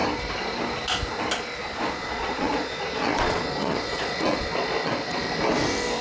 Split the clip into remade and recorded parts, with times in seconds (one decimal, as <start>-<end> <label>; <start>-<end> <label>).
0.0-1.6 recorded; 1.6-5.2 remade; 5.2-6.0 recorded

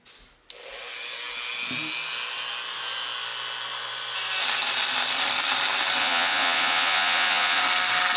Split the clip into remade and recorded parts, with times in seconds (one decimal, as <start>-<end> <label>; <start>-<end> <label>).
0.0-6.0 recorded; 6.0-7.6 remade; 7.6-8.2 recorded

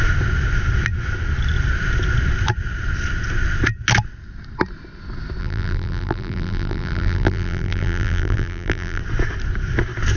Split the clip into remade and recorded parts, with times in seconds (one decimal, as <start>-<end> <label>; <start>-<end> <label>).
0.0-5.4 recorded; 5.4-9.0 remade; 9.0-10.2 recorded

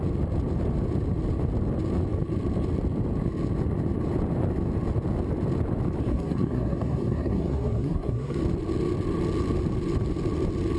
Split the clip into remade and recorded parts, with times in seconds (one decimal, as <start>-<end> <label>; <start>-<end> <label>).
0.0-6.1 recorded; 6.1-8.4 remade; 8.4-10.8 recorded

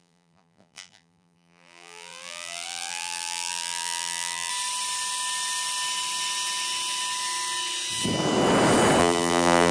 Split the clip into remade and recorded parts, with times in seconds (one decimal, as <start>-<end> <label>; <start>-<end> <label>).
0.0-4.5 remade; 4.5-9.0 recorded; 9.0-9.7 remade

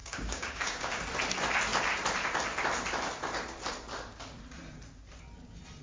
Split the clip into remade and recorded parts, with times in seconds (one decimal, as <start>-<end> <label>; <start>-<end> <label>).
0.0-1.0 remade; 1.0-5.8 recorded